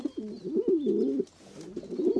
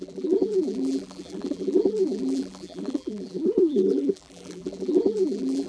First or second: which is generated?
second